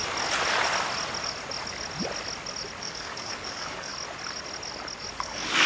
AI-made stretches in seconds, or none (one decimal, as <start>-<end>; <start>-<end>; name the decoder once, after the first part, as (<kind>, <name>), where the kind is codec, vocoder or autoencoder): 2.8-3.9 (codec, DAC); 5.1-5.7